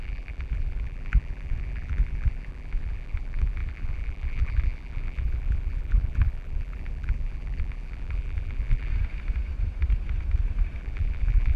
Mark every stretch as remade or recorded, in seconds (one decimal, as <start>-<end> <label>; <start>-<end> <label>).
0.0-8.9 remade; 8.9-10.8 recorded; 10.8-11.6 remade